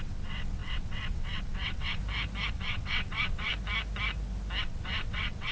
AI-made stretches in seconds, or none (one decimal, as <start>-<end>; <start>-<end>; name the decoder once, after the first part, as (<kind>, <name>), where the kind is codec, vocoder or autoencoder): 0.0-2.0 (vocoder, WaveNeXt); 2.5-3.5; 4.6-5.5